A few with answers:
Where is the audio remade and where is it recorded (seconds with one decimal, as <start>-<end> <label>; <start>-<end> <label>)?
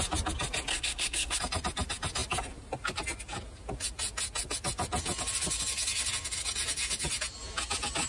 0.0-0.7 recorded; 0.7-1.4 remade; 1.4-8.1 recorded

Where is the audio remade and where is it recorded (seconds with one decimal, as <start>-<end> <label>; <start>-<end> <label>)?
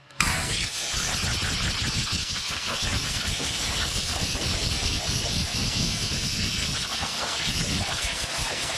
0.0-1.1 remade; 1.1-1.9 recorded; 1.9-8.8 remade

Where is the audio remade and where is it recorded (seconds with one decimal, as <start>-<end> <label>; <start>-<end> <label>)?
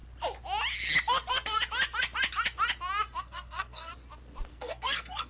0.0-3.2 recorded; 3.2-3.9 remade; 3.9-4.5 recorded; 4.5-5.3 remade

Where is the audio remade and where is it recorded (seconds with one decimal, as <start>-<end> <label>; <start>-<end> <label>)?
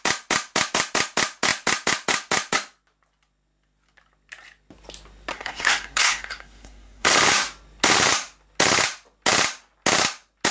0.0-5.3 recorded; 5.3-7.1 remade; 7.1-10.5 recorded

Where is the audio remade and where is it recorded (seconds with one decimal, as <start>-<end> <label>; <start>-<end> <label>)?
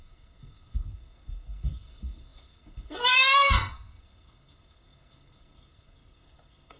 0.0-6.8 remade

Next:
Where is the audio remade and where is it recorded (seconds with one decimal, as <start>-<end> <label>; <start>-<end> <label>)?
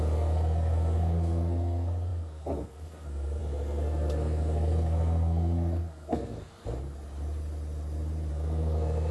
0.0-6.6 remade; 6.6-8.3 recorded; 8.3-9.1 remade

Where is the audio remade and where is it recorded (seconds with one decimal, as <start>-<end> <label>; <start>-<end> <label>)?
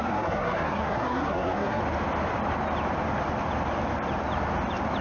0.0-1.8 remade; 1.8-5.0 recorded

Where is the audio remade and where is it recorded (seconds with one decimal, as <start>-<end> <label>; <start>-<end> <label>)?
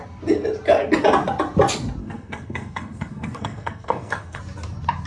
0.0-2.0 recorded; 2.0-4.4 remade; 4.4-5.1 recorded